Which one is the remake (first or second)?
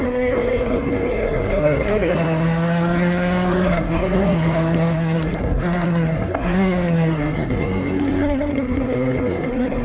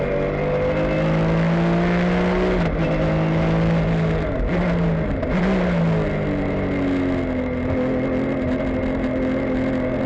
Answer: first